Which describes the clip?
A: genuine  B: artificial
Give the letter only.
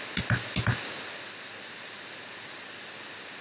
A